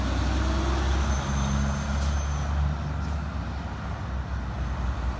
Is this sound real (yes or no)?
yes